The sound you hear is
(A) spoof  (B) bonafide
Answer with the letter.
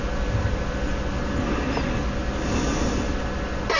B